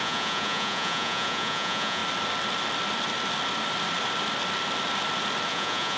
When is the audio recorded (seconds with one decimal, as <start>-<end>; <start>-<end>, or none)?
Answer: 2.0-5.5